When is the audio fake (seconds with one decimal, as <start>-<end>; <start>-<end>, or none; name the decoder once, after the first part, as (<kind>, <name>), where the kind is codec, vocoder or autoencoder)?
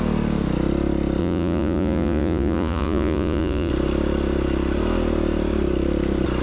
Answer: 1.2-3.7 (vocoder, Vocos)